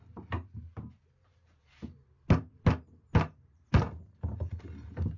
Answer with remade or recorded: recorded